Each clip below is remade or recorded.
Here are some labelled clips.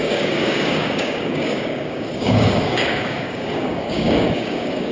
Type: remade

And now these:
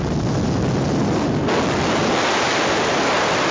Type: recorded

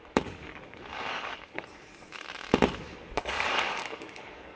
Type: remade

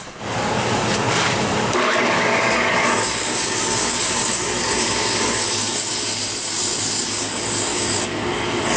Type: remade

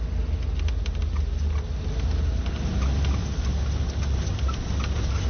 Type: recorded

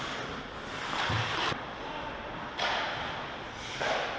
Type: recorded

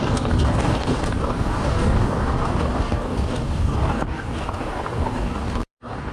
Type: remade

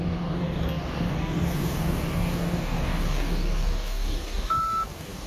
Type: remade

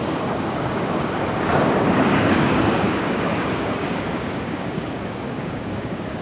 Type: remade